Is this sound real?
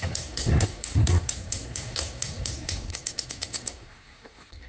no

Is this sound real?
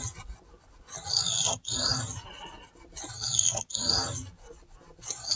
yes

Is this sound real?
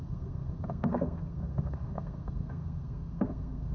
no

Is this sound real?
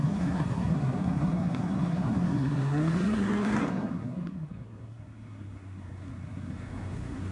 no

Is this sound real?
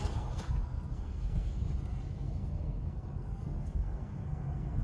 no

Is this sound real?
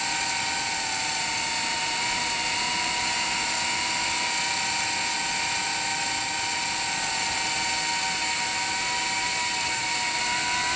yes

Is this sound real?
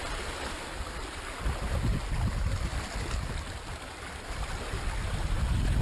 yes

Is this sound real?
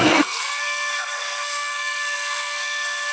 no